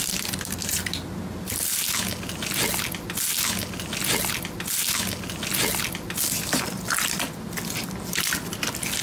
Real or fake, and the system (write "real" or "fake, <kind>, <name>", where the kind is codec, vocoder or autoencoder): real